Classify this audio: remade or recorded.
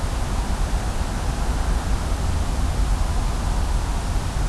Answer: recorded